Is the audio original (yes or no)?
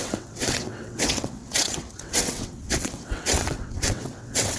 no